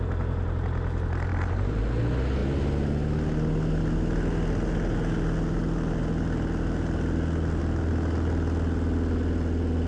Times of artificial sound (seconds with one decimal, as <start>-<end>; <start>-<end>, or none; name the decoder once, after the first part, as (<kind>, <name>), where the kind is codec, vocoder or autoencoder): 1.3-1.8 (vocoder, BigVGAN v2)